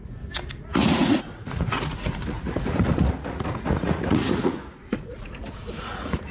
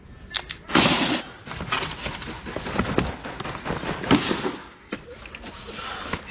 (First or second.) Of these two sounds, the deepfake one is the first